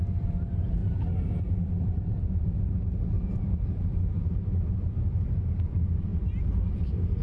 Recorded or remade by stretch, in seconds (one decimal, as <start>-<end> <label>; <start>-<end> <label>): 0.0-0.8 remade; 0.8-1.4 recorded; 1.4-7.2 remade